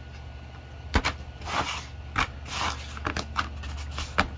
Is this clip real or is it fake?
real